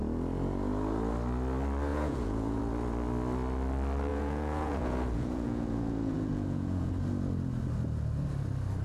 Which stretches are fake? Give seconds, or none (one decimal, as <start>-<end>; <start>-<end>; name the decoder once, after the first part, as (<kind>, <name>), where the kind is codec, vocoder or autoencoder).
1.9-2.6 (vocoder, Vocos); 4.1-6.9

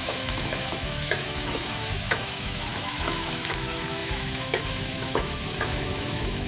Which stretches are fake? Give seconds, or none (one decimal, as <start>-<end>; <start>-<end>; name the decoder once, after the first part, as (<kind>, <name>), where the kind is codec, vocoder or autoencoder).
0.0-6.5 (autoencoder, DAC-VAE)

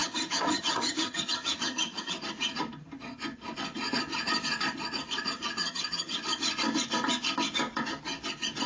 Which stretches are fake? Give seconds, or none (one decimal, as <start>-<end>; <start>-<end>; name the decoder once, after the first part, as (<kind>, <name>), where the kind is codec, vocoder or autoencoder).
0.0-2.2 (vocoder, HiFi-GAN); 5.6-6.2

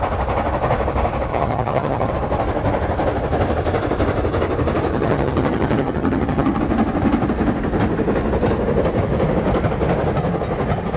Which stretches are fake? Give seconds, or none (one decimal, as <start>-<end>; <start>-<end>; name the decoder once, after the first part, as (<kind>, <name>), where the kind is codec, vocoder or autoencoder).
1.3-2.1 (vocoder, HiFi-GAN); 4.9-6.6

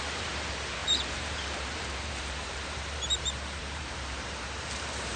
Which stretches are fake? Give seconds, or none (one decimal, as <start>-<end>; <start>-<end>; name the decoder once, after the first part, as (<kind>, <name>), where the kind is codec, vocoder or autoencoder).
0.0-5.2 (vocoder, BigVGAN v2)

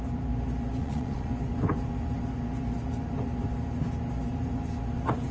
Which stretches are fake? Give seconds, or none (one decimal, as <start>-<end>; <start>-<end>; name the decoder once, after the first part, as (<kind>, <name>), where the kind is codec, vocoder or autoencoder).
0.8-1.3 (vocoder, Vocos)